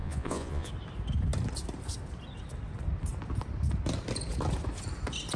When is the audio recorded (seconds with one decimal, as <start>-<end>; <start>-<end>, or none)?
0.7-5.4